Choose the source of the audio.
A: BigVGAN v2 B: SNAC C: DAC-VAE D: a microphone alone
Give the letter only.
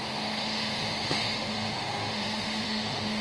C